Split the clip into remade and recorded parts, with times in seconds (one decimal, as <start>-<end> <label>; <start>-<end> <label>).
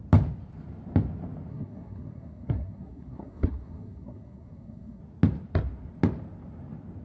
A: 0.0-1.5 recorded; 1.5-5.0 remade; 5.0-7.0 recorded